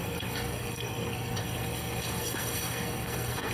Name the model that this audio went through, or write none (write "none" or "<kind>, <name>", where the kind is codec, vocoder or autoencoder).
codec, SNAC